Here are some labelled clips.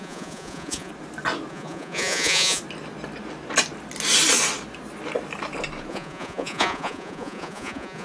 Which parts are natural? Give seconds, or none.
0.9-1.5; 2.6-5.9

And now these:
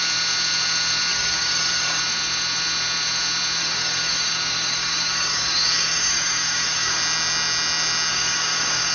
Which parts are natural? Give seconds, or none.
0.0-1.1; 2.0-3.6; 7.0-8.1

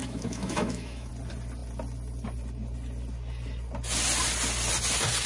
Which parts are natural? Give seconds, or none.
1.1-5.3